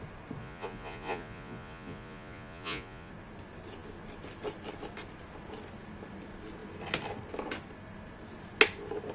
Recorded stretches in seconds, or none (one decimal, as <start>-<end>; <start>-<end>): 0.0-0.4; 3.1-9.1